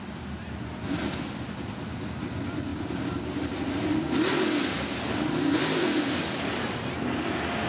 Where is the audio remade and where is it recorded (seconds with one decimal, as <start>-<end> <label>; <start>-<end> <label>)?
0.0-2.7 recorded; 2.7-7.3 remade; 7.3-7.7 recorded